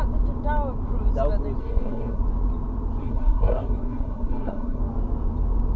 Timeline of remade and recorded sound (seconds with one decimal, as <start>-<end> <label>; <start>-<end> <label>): 0.0-1.6 recorded; 1.6-2.2 remade; 2.2-3.0 recorded; 3.0-4.8 remade; 4.8-5.8 recorded